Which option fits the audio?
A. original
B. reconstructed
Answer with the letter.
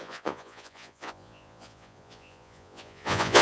B